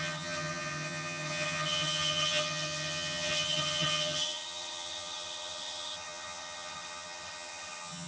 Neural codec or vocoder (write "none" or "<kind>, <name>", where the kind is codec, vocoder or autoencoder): vocoder, HiFi-GAN